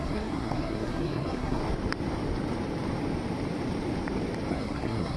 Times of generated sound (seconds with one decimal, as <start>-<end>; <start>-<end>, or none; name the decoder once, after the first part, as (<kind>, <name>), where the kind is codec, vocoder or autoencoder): 0.0-1.6 (codec, SNAC); 4.5-5.2